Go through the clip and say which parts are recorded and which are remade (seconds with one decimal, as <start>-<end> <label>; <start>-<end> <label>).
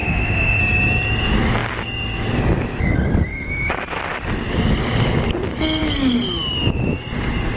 0.0-0.6 remade; 0.6-7.6 recorded